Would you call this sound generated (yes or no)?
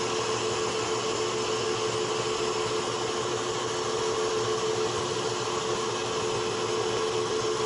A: no